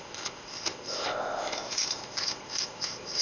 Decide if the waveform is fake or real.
fake